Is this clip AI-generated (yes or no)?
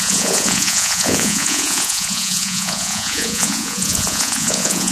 yes